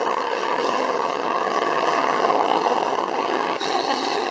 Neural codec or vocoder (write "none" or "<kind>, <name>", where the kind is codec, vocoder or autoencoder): vocoder, HiFi-GAN